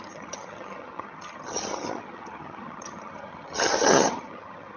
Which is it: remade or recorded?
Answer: remade